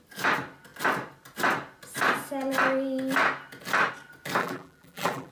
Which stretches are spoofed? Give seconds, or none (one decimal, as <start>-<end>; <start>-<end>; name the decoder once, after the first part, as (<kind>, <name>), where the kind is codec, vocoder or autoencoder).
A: 4.4-5.3 (vocoder, BigVGAN v2)